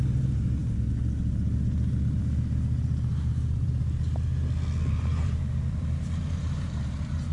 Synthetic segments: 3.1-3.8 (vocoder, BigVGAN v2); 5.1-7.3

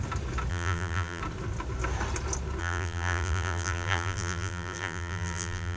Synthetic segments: 0.5-1.2 (vocoder, BigVGAN v2); 2.6-5.8

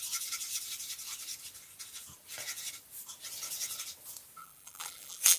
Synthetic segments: 4.4-5.4 (vocoder, BigVGAN v2)

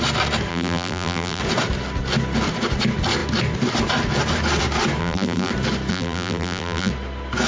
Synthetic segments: 0.5-1.4 (vocoder, BigVGAN v2); 5.0-5.5; 5.9-6.9